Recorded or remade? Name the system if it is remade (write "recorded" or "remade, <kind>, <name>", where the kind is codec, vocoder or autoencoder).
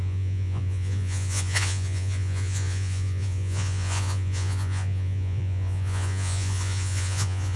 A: remade, vocoder, Vocos